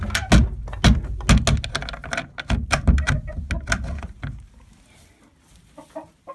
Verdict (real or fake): real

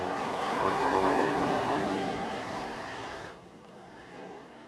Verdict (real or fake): fake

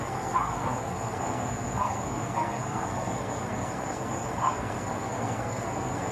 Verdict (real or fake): fake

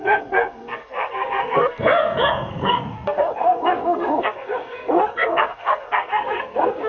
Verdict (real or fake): fake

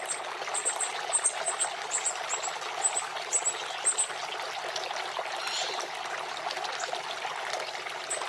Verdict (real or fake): real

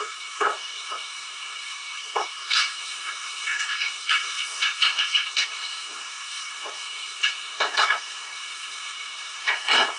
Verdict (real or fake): fake